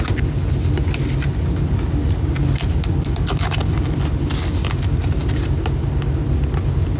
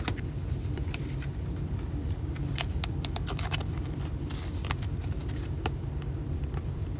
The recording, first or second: first